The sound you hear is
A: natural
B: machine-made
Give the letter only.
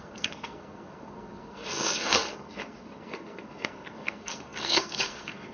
B